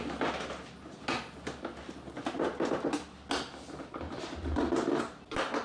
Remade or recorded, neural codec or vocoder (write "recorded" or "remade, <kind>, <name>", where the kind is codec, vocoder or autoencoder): recorded